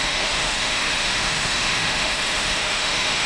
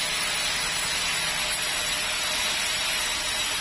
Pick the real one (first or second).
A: second